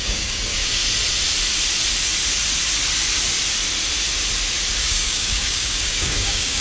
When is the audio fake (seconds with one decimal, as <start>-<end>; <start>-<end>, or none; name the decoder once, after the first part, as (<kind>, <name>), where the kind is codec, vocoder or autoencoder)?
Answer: 0.0-0.8 (codec, DAC); 4.8-6.6